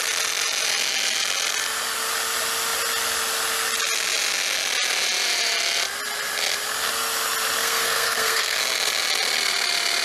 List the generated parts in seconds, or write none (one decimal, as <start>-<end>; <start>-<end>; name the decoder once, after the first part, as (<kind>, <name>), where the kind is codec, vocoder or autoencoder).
7.6-8.6 (codec, SNAC)